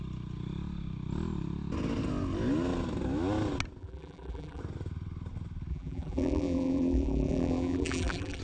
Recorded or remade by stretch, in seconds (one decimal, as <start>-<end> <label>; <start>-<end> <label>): 0.0-3.8 recorded; 3.8-4.6 remade; 4.6-5.7 recorded; 5.7-8.4 remade